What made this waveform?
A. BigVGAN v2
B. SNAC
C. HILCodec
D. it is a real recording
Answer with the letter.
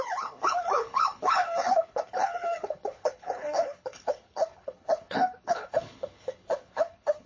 C